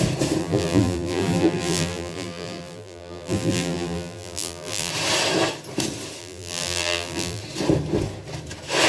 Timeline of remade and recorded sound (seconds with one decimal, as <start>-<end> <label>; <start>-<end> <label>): 0.0-0.4 recorded; 0.4-4.9 remade; 4.9-6.2 recorded; 6.2-7.4 remade; 7.4-8.9 recorded